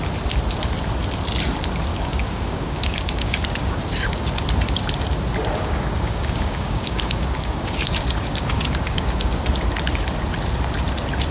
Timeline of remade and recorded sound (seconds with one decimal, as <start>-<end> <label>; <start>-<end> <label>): 0.0-1.9 recorded; 1.9-4.3 remade; 4.3-5.5 recorded; 5.5-9.4 remade; 9.4-11.3 recorded